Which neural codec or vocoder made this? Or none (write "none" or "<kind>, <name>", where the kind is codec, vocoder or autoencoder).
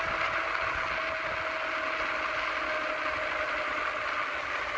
none